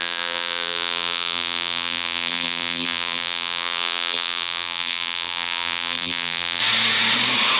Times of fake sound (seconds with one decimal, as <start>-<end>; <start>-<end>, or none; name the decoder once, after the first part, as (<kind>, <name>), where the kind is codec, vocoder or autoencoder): 0.0-6.6 (vocoder, BigVGAN v2)